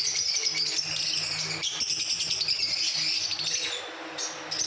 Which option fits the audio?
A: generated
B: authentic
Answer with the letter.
B